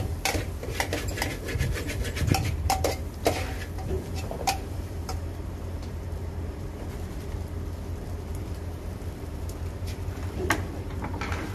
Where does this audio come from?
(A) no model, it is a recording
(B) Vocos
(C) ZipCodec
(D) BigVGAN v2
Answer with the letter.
D